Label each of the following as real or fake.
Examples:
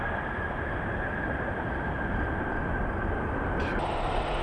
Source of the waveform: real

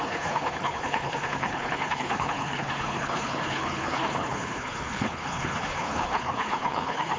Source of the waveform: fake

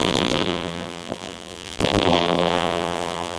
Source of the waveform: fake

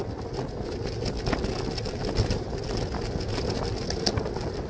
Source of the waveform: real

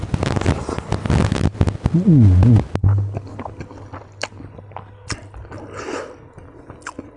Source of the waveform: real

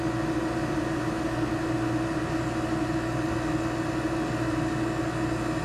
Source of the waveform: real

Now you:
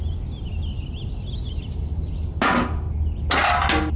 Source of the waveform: real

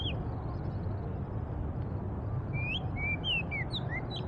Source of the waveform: real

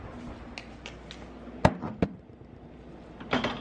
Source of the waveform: real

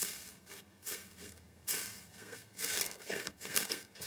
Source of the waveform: fake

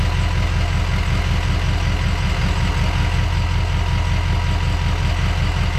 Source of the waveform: real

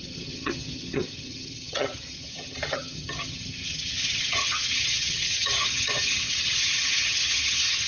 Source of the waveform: fake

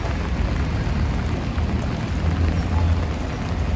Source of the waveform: real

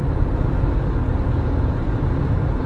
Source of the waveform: real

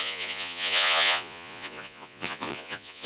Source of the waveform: fake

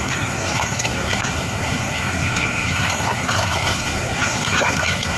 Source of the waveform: fake